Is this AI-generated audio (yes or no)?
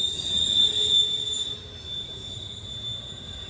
no